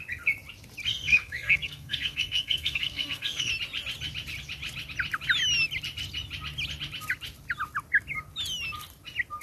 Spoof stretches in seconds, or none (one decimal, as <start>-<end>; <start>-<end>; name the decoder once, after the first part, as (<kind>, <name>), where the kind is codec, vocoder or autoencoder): 0.9-3.5 (codec, SNAC)